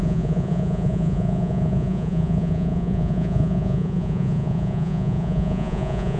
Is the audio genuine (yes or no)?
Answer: no